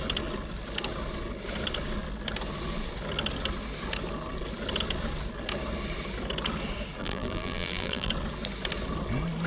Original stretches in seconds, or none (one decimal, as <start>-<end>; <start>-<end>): 0.0-7.0; 8.1-9.5